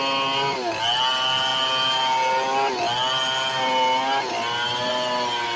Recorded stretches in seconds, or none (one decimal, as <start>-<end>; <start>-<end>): 0.0-5.6